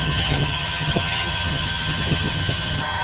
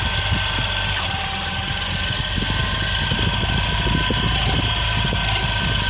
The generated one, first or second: first